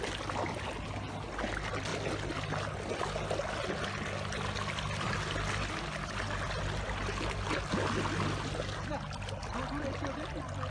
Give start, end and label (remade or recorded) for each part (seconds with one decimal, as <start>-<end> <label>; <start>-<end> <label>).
0.0-10.7 recorded